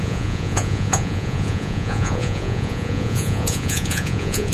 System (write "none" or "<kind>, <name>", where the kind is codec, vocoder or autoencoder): vocoder, Vocos